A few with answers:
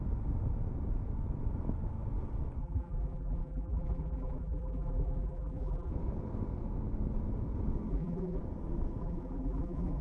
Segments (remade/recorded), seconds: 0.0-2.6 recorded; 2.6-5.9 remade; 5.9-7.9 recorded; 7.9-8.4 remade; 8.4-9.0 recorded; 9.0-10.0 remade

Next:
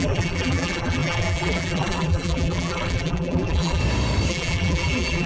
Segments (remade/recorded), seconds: 0.0-3.8 remade; 3.8-4.3 recorded; 4.3-5.3 remade

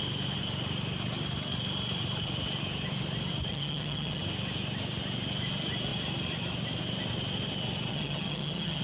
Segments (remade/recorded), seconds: 0.0-3.5 recorded; 3.5-4.2 remade; 4.2-7.9 recorded; 7.9-8.8 remade